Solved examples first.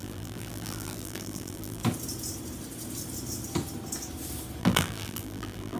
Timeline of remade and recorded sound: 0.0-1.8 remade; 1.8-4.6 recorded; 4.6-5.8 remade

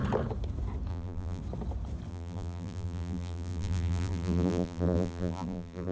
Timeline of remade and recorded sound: 0.0-0.9 recorded; 0.9-1.4 remade; 1.4-2.1 recorded; 2.1-5.9 remade

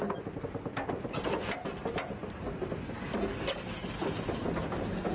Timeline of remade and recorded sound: 0.0-5.1 recorded

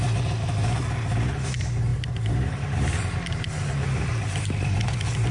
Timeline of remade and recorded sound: 0.0-1.9 recorded; 1.9-5.3 remade

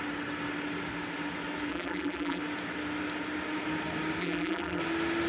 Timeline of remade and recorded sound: 0.0-1.7 recorded; 1.7-2.4 remade; 2.4-4.2 recorded; 4.2-4.8 remade; 4.8-5.3 recorded

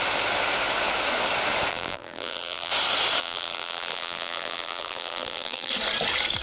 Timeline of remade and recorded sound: 0.0-1.7 recorded; 1.7-2.7 remade; 2.7-3.2 recorded; 3.2-5.7 remade; 5.7-6.4 recorded